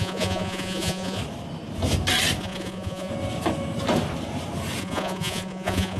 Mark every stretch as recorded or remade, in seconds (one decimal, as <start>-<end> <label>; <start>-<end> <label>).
0.0-1.2 remade; 1.2-2.4 recorded; 2.4-3.1 remade; 3.1-4.8 recorded; 4.8-6.0 remade